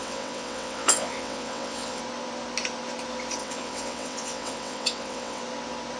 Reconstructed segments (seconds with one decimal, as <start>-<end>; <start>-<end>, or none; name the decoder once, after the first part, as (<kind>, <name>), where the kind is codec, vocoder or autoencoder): 0.0-2.0 (vocoder, WaveNeXt); 3.4-5.4